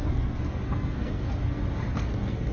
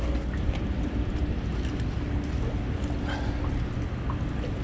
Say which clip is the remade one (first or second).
first